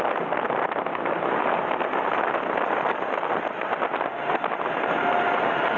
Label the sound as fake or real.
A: real